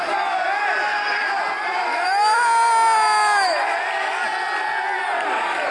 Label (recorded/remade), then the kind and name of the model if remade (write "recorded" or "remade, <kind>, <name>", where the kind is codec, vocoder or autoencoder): recorded